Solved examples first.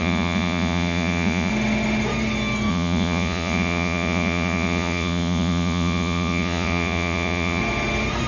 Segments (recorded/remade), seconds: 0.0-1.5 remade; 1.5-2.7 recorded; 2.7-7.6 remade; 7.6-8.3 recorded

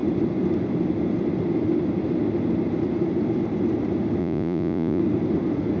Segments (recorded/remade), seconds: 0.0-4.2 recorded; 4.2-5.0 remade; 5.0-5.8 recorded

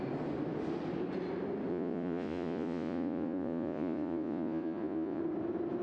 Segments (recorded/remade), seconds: 0.0-1.7 recorded; 1.7-5.2 remade; 5.2-5.8 recorded

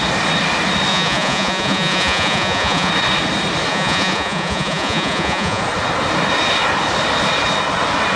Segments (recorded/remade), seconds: 0.0-0.9 recorded; 0.9-2.9 remade; 2.9-3.7 recorded; 3.7-5.6 remade; 5.6-8.2 recorded

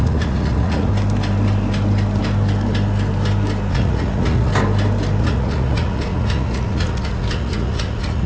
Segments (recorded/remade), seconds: 0.0-0.9 remade; 0.9-3.7 recorded; 3.7-4.5 remade; 4.5-5.2 recorded; 5.2-8.3 remade

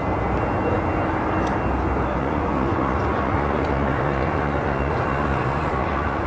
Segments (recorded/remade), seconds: 0.0-2.2 recorded; 2.2-6.3 remade

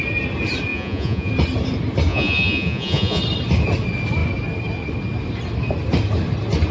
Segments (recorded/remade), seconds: 0.0-0.7 recorded; 0.7-1.3 remade; 1.3-2.1 recorded; 2.1-3.2 remade; 3.2-6.7 recorded